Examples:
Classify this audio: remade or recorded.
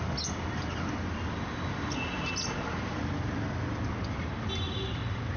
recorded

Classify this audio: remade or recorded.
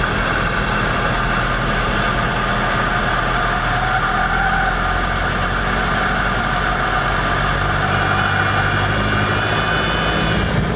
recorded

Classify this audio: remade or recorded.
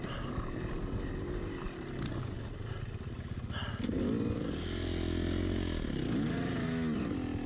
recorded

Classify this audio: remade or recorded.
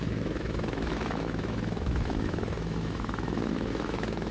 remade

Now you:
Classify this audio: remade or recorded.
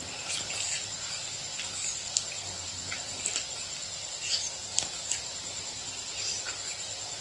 recorded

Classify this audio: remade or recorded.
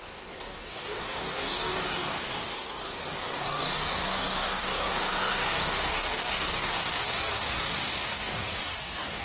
remade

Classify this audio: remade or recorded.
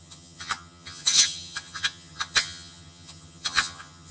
remade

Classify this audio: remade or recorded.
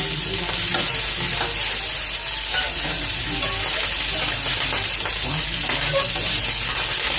recorded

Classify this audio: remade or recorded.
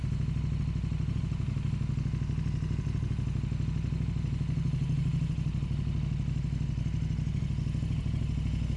recorded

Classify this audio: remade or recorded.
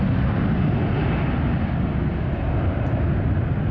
recorded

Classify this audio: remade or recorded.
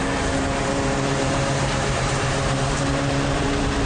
remade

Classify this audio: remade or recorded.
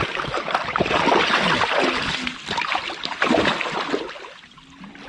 recorded